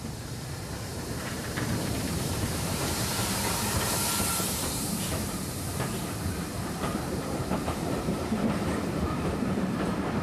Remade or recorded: remade